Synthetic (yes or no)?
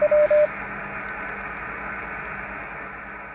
no